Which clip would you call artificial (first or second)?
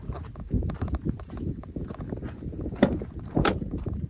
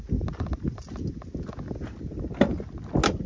first